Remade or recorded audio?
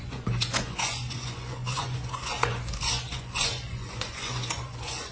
remade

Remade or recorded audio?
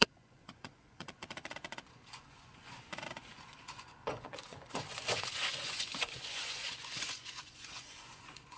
remade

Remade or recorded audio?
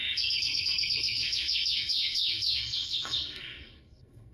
remade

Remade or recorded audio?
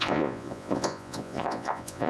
remade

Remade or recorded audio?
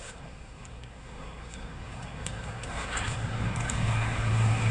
remade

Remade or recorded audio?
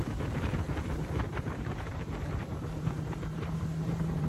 remade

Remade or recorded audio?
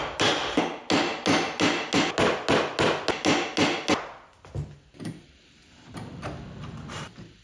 recorded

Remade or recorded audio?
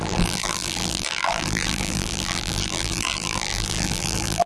remade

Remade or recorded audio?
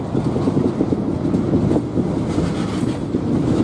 recorded